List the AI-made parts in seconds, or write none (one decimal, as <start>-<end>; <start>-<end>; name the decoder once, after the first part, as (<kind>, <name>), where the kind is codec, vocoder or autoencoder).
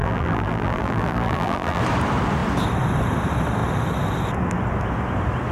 0.0-1.8 (vocoder, BigVGAN v2)